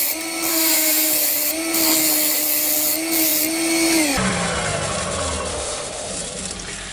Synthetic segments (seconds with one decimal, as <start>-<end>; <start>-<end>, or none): 0.5-1.1; 5.5-6.1